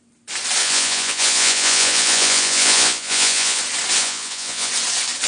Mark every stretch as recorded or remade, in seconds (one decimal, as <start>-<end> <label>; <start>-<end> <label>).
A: 0.0-0.6 recorded; 0.6-3.6 remade; 3.6-4.0 recorded; 4.0-4.7 remade; 4.7-5.3 recorded